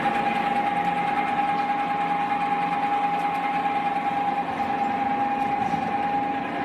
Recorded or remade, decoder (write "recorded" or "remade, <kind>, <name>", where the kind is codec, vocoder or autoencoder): recorded